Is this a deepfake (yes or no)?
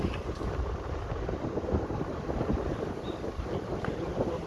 no